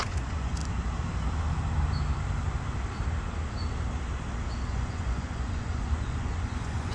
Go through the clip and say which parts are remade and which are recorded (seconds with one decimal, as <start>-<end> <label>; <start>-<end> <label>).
0.0-0.6 remade; 0.6-4.7 recorded; 4.7-6.9 remade